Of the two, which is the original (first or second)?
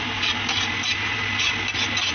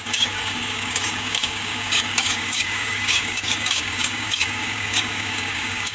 first